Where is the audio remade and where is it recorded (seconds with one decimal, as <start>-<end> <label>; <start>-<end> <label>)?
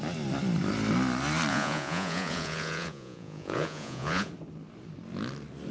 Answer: 0.0-1.5 recorded; 1.5-4.3 remade; 4.3-5.7 recorded